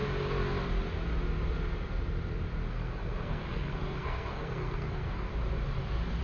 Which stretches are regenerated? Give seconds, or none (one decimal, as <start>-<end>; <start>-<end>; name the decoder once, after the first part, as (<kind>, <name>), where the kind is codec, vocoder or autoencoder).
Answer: 2.7-5.3 (codec, SNAC)